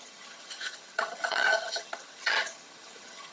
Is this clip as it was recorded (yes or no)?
no